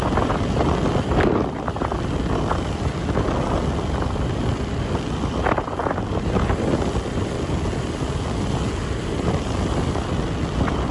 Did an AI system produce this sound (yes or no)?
no